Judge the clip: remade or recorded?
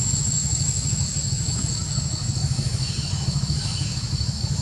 remade